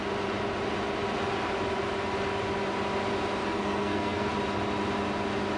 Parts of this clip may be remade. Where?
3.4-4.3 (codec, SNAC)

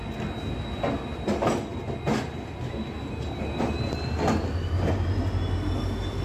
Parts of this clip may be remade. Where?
none

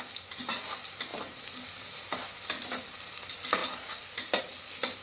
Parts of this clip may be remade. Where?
none

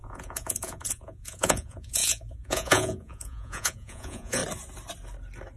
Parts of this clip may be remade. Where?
0.0-4.4 (vocoder, Vocos)

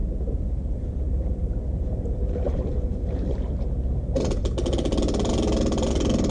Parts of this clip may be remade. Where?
0.0-3.5 (vocoder, BigVGAN v2)

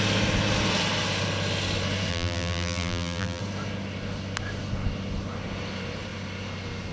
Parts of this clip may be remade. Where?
2.1-3.4 (vocoder, BigVGAN v2)

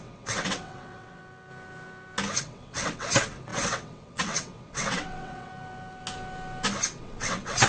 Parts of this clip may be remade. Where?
0.0-1.2 (vocoder, WaveNeXt); 2.4-5.5; 7.0-7.7